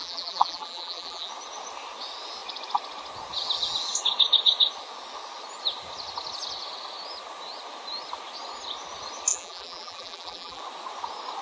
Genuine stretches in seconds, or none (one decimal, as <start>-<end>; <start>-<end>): 1.3-9.3; 10.6-11.4